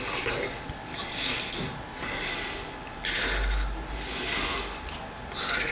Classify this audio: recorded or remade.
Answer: recorded